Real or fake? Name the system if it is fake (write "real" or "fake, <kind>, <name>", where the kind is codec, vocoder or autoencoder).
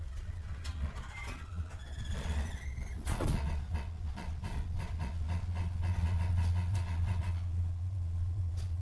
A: fake, vocoder, Vocos